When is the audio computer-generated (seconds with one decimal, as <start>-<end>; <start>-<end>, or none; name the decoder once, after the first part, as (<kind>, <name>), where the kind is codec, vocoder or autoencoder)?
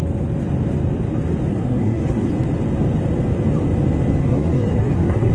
1.5-2.3 (codec, SNAC); 4.2-5.3